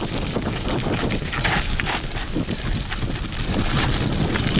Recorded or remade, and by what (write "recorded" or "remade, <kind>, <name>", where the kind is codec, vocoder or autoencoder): recorded